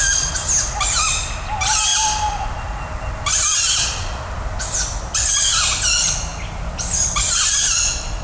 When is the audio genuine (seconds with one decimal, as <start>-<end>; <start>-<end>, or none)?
0.0-8.2

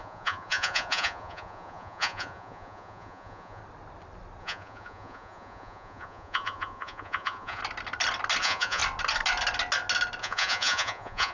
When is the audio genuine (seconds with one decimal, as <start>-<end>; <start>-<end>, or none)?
3.6-4.4; 7.6-8.4; 8.8-10.2